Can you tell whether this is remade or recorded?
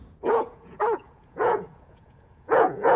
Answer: remade